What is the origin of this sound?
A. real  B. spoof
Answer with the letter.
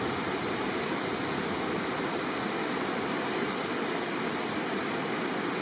A